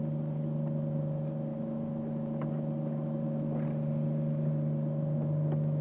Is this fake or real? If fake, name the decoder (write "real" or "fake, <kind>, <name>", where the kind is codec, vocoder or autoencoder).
real